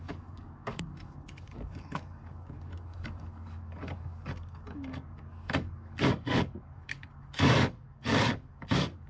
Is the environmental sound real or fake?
fake